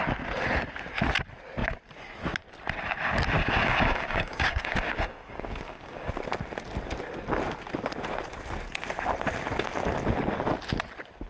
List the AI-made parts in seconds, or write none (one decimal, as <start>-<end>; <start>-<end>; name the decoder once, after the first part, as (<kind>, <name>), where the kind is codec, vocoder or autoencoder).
3.4-6.1 (codec, DAC)